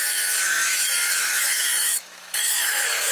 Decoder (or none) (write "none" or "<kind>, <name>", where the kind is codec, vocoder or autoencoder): autoencoder, DAC-VAE